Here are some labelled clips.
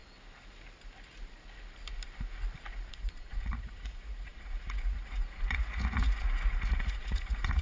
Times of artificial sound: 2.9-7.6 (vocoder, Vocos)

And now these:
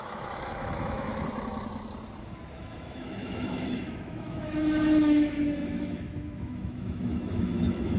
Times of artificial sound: 0.0-1.1 (autoencoder, DAC-VAE); 2.6-8.0

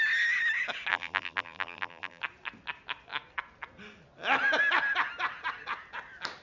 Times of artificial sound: 0.9-2.2 (vocoder, BigVGAN v2)

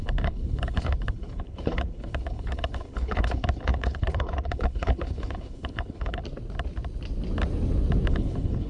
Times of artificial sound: 0.0-6.2 (codec, HILCodec); 8.1-8.7